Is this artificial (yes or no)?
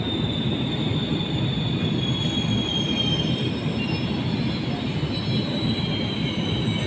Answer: no